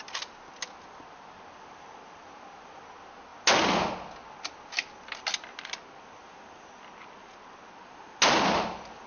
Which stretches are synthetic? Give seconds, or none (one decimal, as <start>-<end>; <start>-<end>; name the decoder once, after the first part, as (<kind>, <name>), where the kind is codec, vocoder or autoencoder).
none